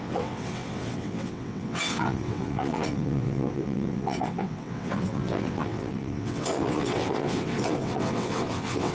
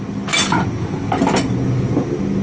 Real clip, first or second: second